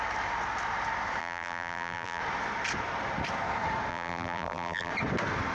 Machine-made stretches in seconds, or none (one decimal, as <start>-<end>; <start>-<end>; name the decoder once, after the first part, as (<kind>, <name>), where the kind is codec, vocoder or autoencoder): 1.2-2.2 (vocoder, BigVGAN v2); 3.9-4.9